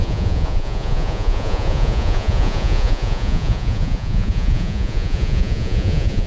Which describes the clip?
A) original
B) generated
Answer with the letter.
B